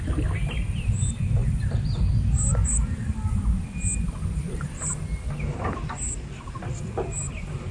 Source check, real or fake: real